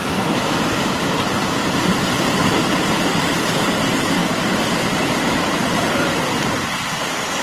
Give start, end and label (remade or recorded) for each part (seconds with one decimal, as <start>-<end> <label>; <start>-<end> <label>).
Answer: 0.0-1.1 recorded; 1.1-4.2 remade; 4.2-5.9 recorded; 5.9-7.4 remade